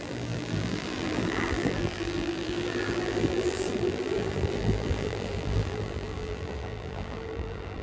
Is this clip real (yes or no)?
no